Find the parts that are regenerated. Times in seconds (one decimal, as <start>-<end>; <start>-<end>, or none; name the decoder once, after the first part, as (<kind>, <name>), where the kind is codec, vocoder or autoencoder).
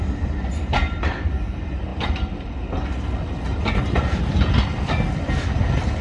none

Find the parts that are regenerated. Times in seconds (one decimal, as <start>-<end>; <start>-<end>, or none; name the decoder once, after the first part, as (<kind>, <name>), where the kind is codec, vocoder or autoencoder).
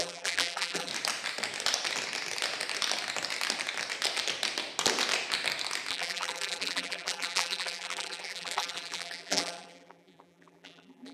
0.0-0.9 (vocoder, BigVGAN v2); 5.9-11.1